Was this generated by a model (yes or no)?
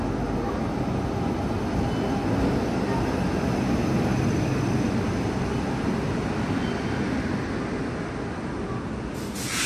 no